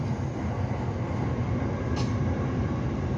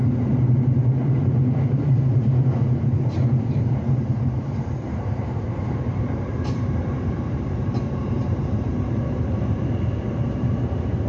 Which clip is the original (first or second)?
first